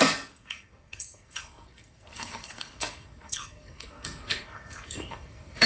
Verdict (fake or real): fake